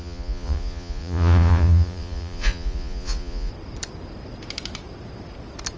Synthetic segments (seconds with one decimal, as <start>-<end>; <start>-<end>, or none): 0.0-3.5